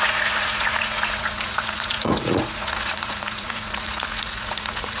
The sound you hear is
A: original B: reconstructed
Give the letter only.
B